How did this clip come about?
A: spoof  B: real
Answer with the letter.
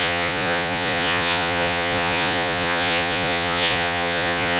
A